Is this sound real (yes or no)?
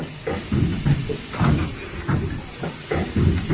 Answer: yes